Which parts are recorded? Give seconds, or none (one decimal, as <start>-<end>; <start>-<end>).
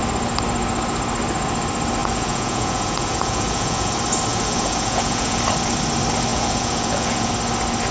0.0-2.0; 3.9-4.3; 5.4-6.3; 7.3-7.9